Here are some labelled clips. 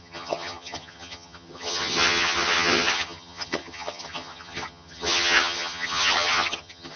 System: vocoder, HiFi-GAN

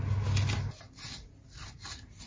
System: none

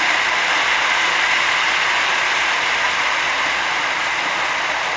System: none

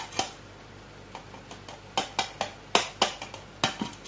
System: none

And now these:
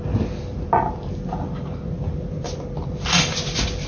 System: none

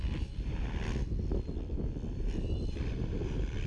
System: none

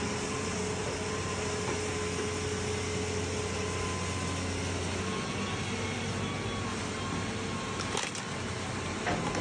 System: none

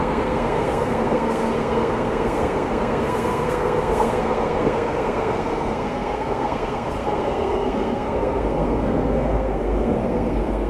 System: codec, SNAC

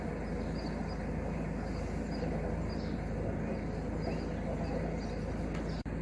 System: none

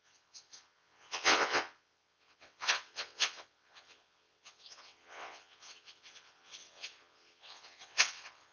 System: vocoder, WaveNeXt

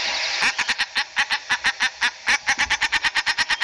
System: none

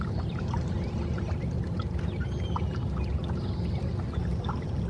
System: none